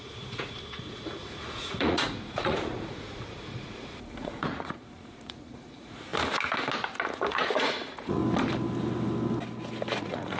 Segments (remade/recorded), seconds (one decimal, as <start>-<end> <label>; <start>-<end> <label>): 0.0-6.1 remade; 6.1-7.3 recorded; 7.3-8.2 remade; 8.2-10.0 recorded; 10.0-10.4 remade